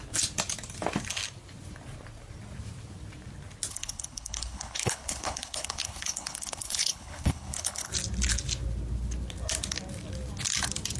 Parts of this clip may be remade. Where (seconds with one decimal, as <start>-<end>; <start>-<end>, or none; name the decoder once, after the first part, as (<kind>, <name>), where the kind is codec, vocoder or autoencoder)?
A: 3.7-7.9 (codec, HILCodec)